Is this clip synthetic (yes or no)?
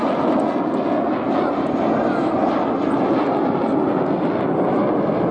no